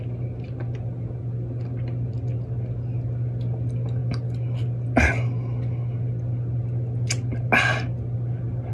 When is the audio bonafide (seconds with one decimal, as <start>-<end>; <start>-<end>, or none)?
0.0-8.7